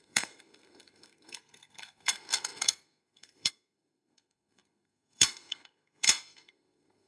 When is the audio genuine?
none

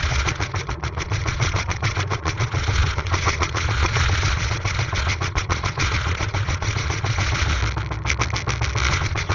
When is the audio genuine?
7.6-8.9